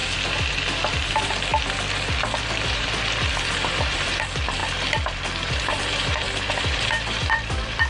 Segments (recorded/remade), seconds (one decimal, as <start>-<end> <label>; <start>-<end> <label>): 0.0-0.9 recorded; 0.9-1.5 remade; 1.5-2.4 recorded; 2.4-4.6 remade; 4.6-5.5 recorded; 5.5-7.9 remade